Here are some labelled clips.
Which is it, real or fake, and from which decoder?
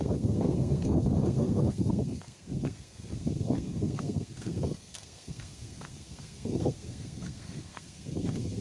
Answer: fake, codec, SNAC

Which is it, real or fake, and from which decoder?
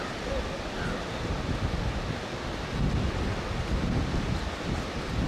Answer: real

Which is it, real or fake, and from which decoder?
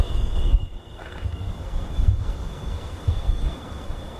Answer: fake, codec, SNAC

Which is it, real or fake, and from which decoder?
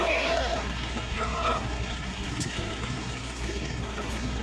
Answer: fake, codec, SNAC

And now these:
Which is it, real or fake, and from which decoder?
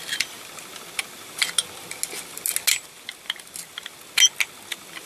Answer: real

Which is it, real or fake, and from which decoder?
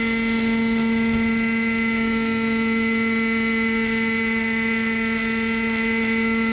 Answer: real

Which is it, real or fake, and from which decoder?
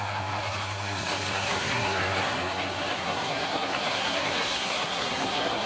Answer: fake, codec, SNAC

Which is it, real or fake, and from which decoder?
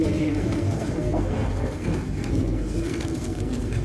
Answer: fake, codec, SNAC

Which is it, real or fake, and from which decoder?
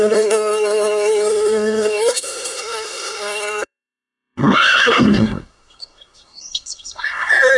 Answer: fake, codec, SNAC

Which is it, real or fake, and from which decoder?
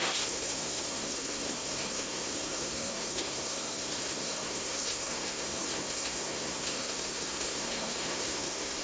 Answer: fake, codec, SNAC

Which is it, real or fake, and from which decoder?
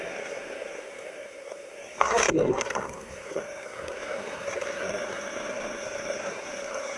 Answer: fake, codec, SNAC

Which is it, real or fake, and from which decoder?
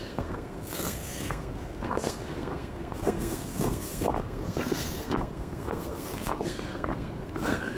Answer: fake, codec, SNAC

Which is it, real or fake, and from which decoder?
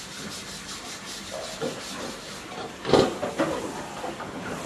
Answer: real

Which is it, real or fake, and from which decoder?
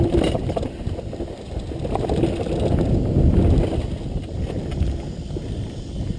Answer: real